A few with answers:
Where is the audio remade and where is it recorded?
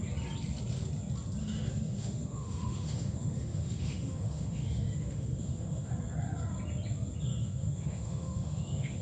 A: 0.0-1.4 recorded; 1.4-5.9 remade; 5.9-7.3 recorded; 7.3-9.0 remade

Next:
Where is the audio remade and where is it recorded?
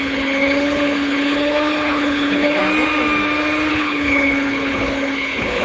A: 0.0-2.6 remade; 2.6-3.7 recorded; 3.7-5.6 remade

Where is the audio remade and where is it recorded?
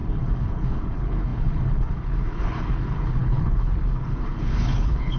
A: 0.0-5.2 remade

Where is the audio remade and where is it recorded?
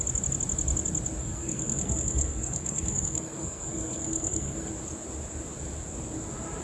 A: 0.0-1.2 recorded; 1.2-4.7 remade; 4.7-6.6 recorded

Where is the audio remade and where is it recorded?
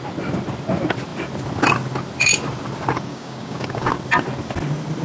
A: 0.0-3.1 recorded; 3.1-3.9 remade; 3.9-5.0 recorded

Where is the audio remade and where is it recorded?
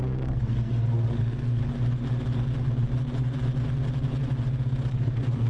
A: 0.0-1.6 remade; 1.6-4.9 recorded; 4.9-5.5 remade